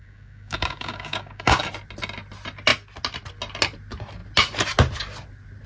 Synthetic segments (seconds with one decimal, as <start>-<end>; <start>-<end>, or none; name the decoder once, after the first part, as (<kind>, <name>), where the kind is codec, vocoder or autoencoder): 0.0-1.6 (codec, DAC)